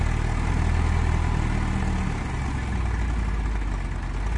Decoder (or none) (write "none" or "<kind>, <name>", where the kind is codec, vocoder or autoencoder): none